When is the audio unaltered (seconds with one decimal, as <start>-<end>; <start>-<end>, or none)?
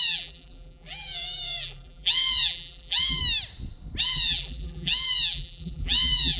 3.2-4.0